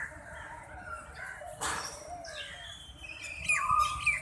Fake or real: fake